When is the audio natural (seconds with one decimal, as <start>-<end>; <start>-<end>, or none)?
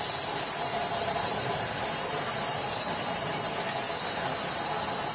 0.0-0.7; 3.4-5.1